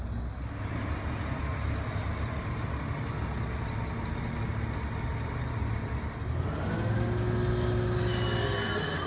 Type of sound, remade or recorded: recorded